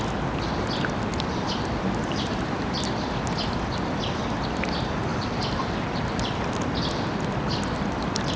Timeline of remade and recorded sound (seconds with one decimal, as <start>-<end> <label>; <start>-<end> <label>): 0.0-1.1 recorded; 1.1-2.3 remade; 2.3-5.1 recorded; 5.1-7.4 remade; 7.4-8.4 recorded